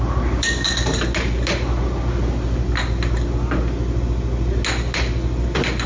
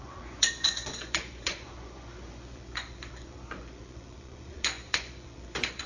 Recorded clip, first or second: first